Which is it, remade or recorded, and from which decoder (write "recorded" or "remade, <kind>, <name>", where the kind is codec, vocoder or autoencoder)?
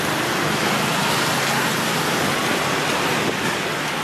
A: recorded